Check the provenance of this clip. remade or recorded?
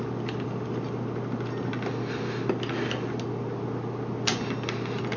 recorded